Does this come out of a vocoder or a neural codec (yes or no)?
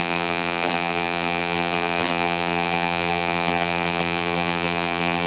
yes